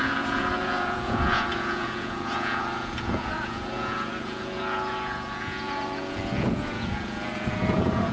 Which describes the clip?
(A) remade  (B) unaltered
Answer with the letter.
A